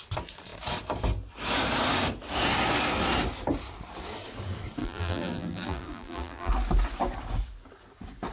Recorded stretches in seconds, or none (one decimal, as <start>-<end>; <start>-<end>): 0.0-4.8; 6.5-8.3